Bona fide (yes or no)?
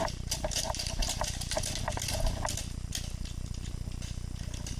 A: yes